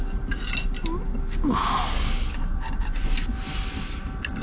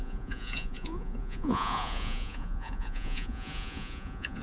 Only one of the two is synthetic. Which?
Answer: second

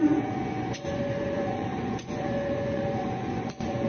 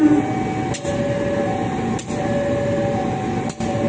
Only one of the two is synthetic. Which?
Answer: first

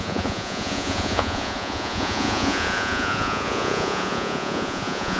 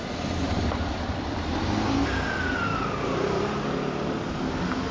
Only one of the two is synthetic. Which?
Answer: first